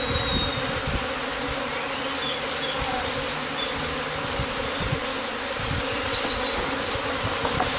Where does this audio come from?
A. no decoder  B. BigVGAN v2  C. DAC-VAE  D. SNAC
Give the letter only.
A